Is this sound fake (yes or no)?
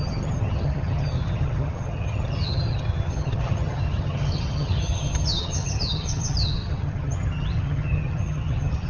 yes